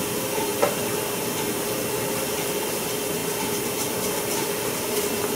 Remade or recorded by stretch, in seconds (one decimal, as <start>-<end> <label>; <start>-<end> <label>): 0.0-5.3 recorded

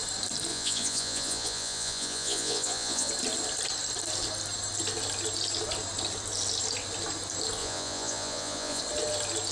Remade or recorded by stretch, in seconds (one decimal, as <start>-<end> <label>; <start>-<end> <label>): 0.0-0.5 recorded; 0.5-3.1 remade; 3.1-7.6 recorded; 7.6-8.8 remade; 8.8-9.5 recorded

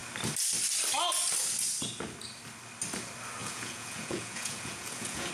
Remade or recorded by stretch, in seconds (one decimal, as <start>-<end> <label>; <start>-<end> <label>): 0.0-3.4 recorded; 3.4-5.3 remade

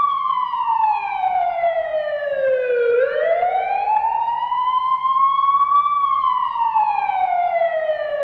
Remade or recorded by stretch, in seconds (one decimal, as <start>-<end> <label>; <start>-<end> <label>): 0.0-1.9 remade; 1.9-3.0 recorded; 3.0-5.1 remade; 5.1-6.2 recorded; 6.2-8.2 remade